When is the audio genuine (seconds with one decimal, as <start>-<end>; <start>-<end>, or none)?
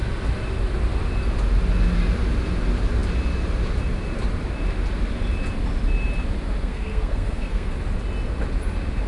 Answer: 0.0-6.6; 7.7-9.1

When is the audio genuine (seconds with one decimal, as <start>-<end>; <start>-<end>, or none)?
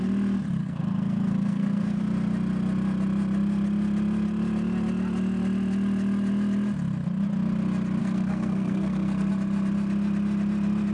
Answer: 0.0-0.6; 2.0-8.0; 9.3-10.9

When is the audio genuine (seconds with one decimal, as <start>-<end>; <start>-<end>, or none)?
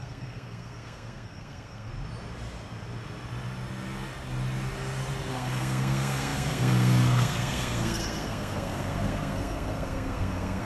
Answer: 1.9-5.3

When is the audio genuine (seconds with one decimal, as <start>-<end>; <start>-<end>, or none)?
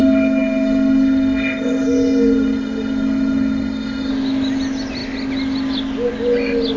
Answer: 4.1-6.8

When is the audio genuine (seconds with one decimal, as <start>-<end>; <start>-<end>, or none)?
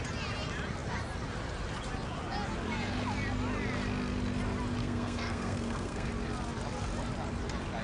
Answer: 0.0-4.8; 6.1-7.8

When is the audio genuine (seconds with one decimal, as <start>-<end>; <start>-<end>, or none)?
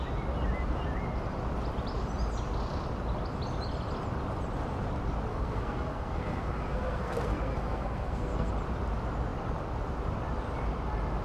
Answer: 0.0-5.3; 8.5-11.2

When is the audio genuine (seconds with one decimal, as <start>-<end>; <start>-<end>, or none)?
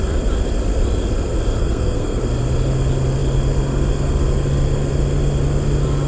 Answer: 0.0-1.6; 2.2-6.1